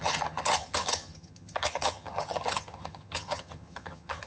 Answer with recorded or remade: remade